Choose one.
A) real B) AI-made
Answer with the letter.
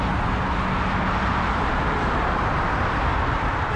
A